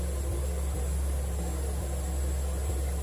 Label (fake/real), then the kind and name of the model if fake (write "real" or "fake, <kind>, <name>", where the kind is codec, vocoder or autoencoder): real